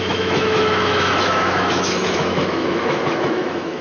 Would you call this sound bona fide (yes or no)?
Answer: no